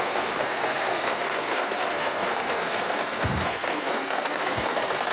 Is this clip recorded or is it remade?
remade